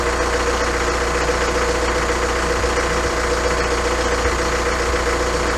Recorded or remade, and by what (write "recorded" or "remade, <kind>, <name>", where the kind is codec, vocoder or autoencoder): recorded